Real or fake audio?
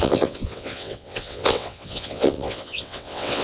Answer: fake